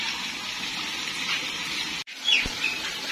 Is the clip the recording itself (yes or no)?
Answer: yes